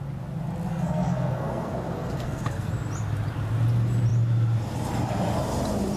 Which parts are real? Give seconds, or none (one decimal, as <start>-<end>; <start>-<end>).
0.0-0.7; 2.7-6.0